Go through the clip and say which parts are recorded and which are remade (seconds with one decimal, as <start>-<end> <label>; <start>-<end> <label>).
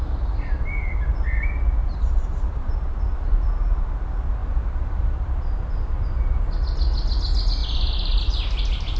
0.0-1.8 recorded; 1.8-2.7 remade; 2.7-7.6 recorded; 7.6-8.2 remade; 8.2-9.0 recorded